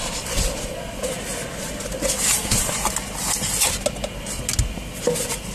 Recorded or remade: recorded